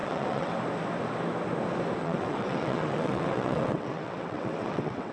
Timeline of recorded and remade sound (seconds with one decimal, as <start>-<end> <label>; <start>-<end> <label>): 0.0-0.5 remade; 0.5-2.0 recorded; 2.0-5.1 remade